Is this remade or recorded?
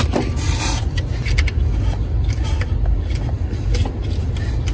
recorded